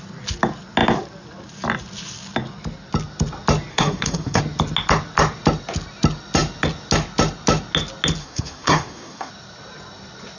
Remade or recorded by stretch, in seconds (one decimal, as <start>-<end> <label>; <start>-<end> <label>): 0.0-3.7 recorded; 3.7-4.4 remade; 4.4-8.2 recorded; 8.2-9.3 remade; 9.3-10.4 recorded